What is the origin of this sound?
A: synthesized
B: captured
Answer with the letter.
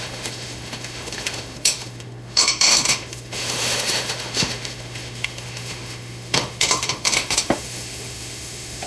A